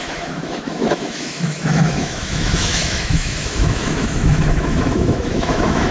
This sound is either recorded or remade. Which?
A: remade